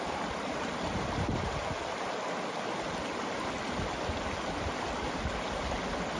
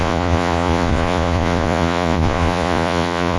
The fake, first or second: second